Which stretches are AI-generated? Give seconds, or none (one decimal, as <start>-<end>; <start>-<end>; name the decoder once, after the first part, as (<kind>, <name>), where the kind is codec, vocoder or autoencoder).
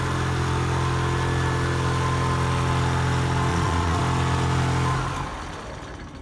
3.5-4.0 (vocoder, Vocos)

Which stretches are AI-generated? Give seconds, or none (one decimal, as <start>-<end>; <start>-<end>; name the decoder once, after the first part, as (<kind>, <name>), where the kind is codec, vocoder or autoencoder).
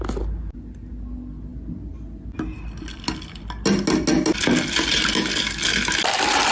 none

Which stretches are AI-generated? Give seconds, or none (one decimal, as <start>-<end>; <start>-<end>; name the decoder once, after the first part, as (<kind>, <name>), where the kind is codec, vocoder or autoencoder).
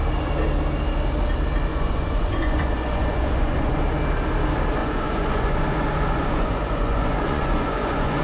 1.7-3.8 (vocoder, Vocos); 4.8-8.2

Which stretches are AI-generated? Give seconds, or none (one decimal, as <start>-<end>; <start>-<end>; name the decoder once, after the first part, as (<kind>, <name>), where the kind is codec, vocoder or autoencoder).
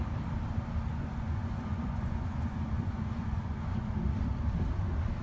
0.9-3.9 (vocoder, Vocos)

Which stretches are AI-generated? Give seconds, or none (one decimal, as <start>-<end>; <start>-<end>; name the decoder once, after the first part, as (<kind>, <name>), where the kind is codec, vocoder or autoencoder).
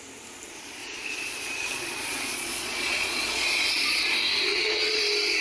0.8-4.0 (vocoder, Vocos); 4.5-5.0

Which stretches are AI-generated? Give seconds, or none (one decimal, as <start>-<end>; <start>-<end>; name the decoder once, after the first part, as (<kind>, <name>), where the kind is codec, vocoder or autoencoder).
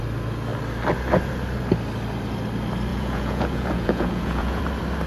2.9-4.6 (vocoder, Vocos)